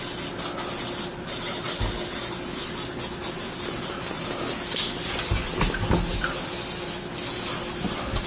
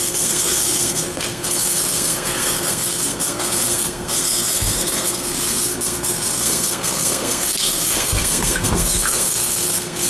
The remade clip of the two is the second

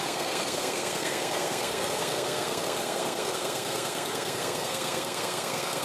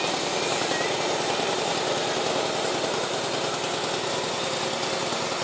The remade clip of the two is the first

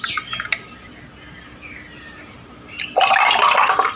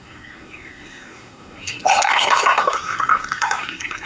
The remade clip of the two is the second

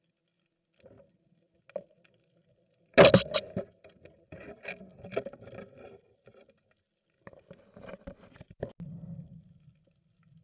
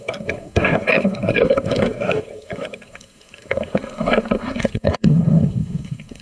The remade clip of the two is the second